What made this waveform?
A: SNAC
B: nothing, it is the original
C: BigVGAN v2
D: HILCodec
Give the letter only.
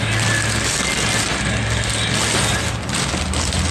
B